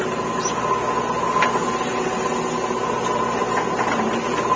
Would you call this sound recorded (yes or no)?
yes